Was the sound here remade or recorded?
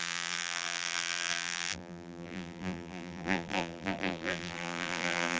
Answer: remade